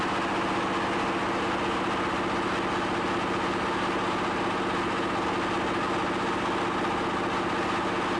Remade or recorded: recorded